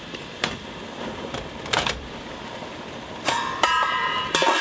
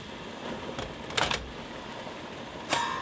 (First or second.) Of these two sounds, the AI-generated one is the first